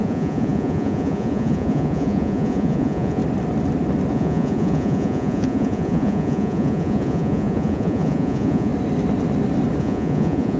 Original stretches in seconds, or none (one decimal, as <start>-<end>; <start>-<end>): 3.2-4.1; 8.7-9.8